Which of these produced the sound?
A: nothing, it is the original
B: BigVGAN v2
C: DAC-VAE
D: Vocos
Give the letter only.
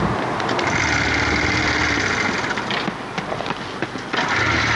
A